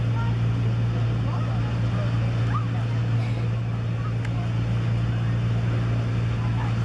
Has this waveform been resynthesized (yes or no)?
no